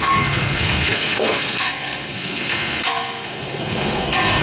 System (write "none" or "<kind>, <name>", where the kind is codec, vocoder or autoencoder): codec, SNAC